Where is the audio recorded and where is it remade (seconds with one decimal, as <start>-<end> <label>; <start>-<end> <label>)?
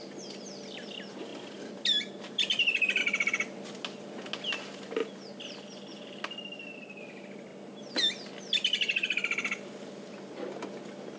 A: 0.0-11.2 recorded